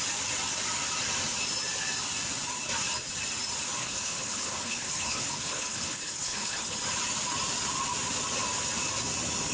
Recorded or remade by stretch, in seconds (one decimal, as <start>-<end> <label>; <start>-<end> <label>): 0.0-3.8 recorded; 3.8-6.8 remade; 6.8-9.5 recorded